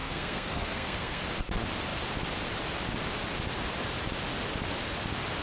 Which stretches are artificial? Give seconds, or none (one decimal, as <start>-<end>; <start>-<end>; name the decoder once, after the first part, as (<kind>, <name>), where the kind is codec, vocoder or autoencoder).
0.0-1.2 (codec, SNAC)